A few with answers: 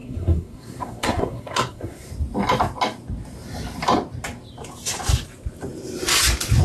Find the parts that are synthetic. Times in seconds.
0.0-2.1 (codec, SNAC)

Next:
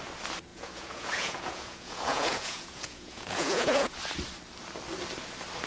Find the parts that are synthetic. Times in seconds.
0.5-3.9 (vocoder, Vocos)

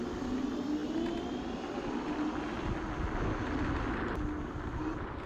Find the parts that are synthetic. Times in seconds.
none

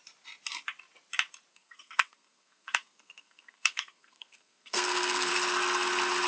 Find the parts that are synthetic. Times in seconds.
1.5-5.3 (codec, SNAC)

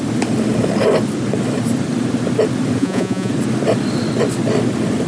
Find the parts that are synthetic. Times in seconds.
2.8-3.3 (vocoder, Vocos)

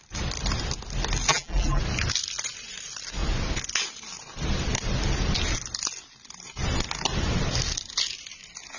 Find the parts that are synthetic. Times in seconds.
1.3-1.8 (vocoder, BigVGAN v2)

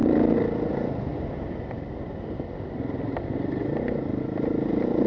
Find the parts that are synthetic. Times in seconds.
0.7-1.1 (vocoder, BigVGAN v2); 4.2-5.1

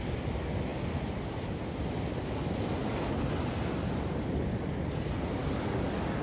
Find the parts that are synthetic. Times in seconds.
5.4-6.2 (codec, DAC)